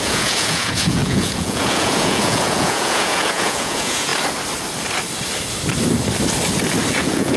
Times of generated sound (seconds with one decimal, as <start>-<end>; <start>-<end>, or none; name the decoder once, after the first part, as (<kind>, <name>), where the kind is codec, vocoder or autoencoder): 0.0-4.1 (vocoder, Vocos); 6.9-7.4